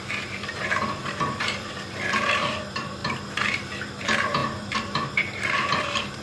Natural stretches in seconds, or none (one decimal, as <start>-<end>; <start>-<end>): 3.0-3.8